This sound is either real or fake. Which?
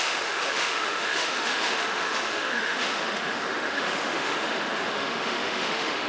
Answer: fake